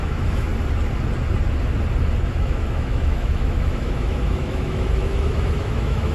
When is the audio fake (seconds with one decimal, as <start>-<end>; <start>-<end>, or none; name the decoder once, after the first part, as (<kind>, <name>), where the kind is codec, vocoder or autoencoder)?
0.0-0.5 (autoencoder, DAC-VAE); 2.3-6.1